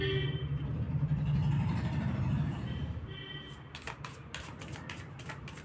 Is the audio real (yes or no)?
yes